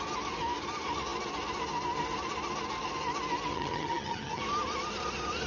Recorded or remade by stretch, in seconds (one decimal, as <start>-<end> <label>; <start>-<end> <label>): 0.0-3.5 recorded; 3.5-4.4 remade; 4.4-5.5 recorded